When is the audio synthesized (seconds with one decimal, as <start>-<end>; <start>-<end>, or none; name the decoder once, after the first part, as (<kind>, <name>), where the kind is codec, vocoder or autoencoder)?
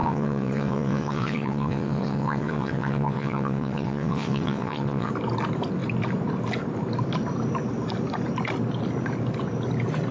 0.0-5.1 (vocoder, WaveNeXt)